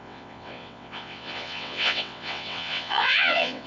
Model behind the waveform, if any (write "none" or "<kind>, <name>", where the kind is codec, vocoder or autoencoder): vocoder, WaveNeXt